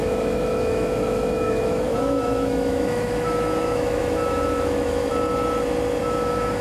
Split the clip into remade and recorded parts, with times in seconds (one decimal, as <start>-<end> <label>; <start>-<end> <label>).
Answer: 0.0-5.1 remade; 5.1-6.0 recorded; 6.0-6.6 remade